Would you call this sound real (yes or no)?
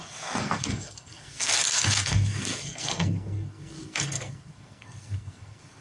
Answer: no